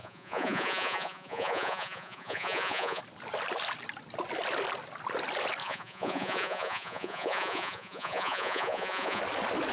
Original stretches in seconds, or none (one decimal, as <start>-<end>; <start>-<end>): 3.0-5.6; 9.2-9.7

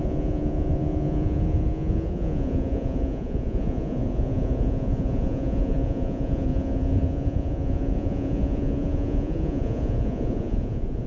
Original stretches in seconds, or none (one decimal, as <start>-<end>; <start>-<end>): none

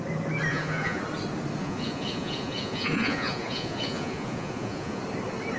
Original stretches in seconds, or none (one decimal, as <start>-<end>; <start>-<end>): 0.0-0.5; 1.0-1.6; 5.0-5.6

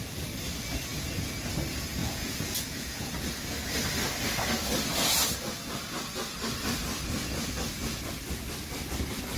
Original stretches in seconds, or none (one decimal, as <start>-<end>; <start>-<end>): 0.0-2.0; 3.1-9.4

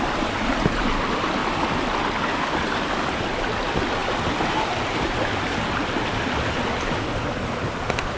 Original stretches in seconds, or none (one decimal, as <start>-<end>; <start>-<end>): 0.0-8.2

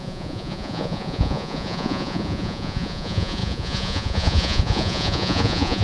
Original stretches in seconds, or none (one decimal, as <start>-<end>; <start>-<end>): none

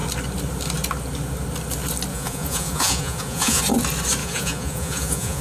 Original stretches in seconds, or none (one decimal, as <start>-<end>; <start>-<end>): 0.0-2.1; 3.6-4.2

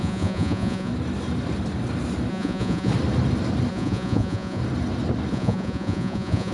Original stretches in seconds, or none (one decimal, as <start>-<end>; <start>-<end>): 0.9-2.3; 2.9-3.7; 4.6-5.3